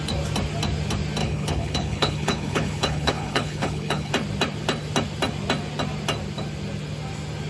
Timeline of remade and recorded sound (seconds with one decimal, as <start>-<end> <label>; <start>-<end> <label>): 0.0-1.2 recorded; 1.2-4.1 remade; 4.1-7.5 recorded